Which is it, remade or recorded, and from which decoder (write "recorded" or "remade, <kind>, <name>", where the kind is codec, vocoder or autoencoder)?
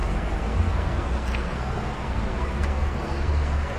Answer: remade, codec, SNAC